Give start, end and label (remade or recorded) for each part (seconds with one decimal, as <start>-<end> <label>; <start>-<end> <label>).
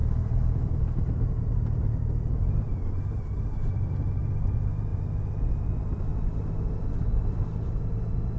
0.0-6.1 remade; 6.1-6.8 recorded; 6.8-8.4 remade